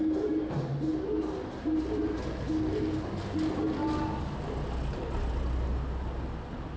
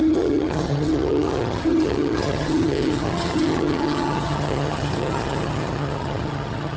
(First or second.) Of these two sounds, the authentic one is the first